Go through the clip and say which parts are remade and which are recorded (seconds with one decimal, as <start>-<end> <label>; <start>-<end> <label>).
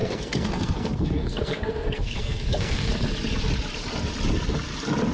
0.0-2.9 remade; 2.9-5.1 recorded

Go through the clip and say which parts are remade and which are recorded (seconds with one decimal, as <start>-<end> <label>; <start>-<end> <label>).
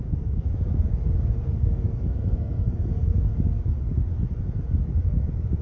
0.0-0.5 remade; 0.5-1.4 recorded; 1.4-3.3 remade; 3.3-5.6 recorded